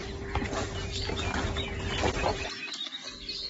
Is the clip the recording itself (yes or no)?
yes